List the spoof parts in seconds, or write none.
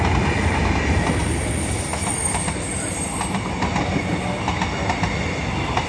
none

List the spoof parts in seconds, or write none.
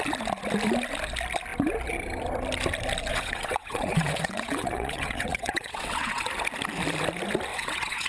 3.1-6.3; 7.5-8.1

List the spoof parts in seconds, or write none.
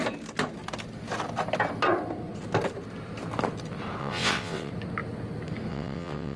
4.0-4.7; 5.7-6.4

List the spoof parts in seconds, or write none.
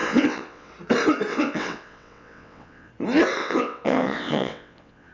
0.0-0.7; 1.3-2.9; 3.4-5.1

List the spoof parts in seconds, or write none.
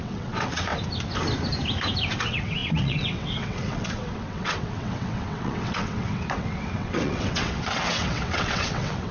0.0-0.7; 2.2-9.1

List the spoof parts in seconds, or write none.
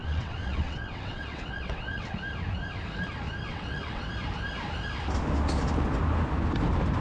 0.0-2.2; 3.5-4.0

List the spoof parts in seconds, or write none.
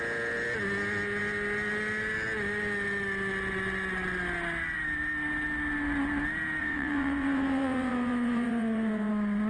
6.6-9.1